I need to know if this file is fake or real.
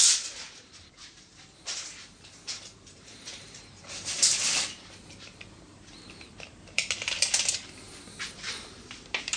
fake